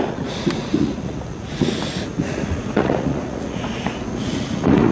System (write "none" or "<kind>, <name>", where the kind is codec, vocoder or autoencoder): vocoder, Vocos